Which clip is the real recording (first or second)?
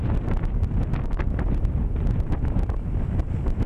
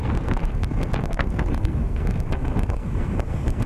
first